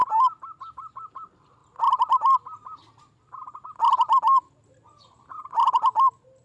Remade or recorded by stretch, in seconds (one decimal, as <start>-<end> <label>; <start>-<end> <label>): 0.0-0.7 recorded; 0.7-1.6 remade; 1.6-5.4 recorded; 5.4-6.4 remade